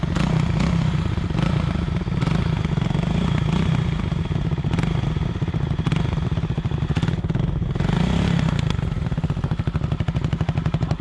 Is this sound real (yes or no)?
yes